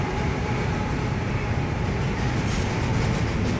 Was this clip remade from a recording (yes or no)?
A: no